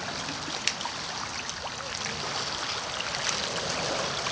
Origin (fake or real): real